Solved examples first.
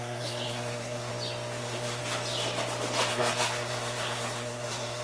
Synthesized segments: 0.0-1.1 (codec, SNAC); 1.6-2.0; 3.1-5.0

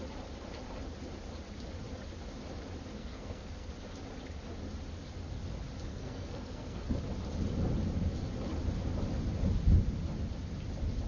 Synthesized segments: 2.9-3.7 (codec, SNAC); 5.9-7.0

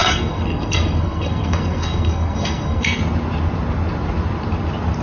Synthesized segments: 0.0-3.0 (codec, SNAC)

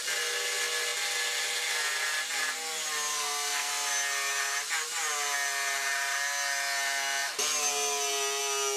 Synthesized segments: 3.1-3.7 (codec, SNAC)